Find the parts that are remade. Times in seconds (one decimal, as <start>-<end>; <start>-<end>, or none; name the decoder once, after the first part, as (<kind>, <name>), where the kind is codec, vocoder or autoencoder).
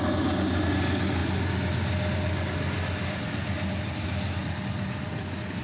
none